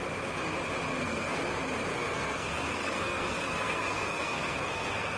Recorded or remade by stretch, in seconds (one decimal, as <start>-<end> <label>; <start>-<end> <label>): 0.0-0.9 recorded; 0.9-1.4 remade; 1.4-1.9 recorded; 1.9-5.2 remade